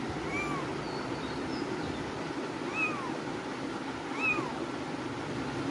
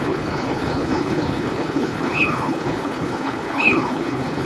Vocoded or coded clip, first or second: second